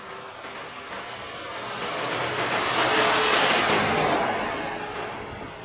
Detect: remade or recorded recorded